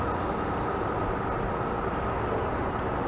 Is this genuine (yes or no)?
yes